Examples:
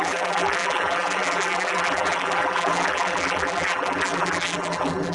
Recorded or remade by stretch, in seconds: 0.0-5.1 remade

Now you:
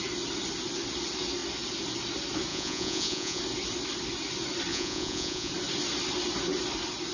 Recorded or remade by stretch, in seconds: 0.0-2.5 recorded; 2.5-3.4 remade; 3.4-4.7 recorded; 4.7-5.5 remade; 5.5-7.1 recorded